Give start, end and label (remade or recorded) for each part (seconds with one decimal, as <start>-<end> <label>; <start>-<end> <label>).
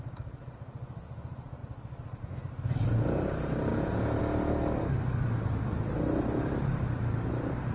0.0-3.7 recorded; 3.7-4.2 remade; 4.2-7.7 recorded